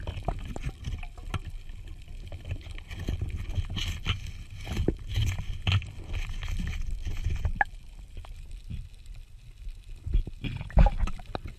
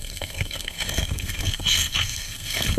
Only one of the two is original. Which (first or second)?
first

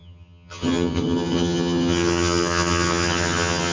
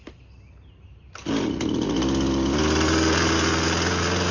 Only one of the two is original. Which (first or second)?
second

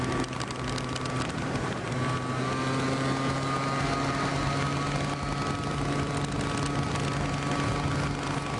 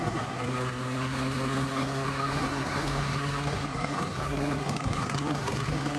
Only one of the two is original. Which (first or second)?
first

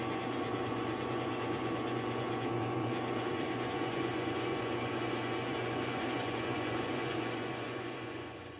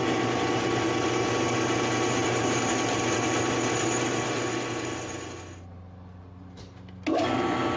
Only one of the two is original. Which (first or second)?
second